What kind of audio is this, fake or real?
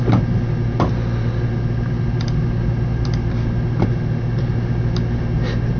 real